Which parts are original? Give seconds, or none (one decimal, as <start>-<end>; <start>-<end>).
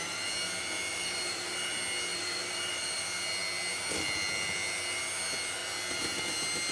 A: 0.0-0.9; 1.7-2.1; 3.0-6.7